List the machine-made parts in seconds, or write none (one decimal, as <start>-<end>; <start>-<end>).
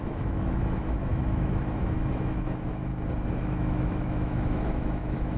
0.0-2.9; 3.4-5.4